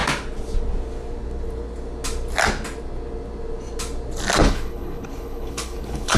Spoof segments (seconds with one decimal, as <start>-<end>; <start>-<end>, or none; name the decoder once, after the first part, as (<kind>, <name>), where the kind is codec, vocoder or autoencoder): 4.4-6.2 (codec, HILCodec)